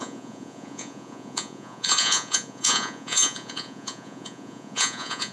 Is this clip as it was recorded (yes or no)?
no